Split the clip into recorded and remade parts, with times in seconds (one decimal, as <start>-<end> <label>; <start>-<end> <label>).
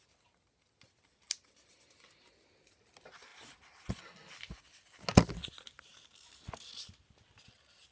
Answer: 0.0-7.9 recorded